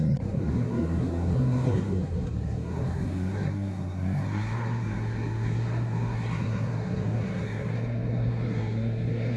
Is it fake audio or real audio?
fake